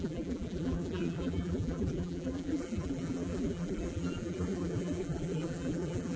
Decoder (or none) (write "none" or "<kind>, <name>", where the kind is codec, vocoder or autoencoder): vocoder, BigVGAN v2